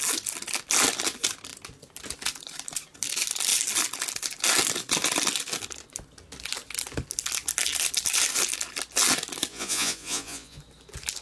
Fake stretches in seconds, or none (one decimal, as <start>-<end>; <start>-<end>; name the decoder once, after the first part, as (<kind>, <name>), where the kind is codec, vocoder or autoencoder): 9.5-10.6 (vocoder, Vocos)